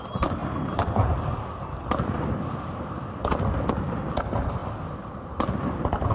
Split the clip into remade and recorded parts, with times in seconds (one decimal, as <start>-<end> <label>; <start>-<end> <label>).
0.0-6.1 recorded